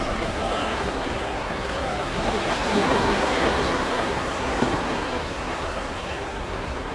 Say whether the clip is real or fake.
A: fake